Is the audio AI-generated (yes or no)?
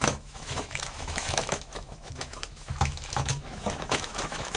yes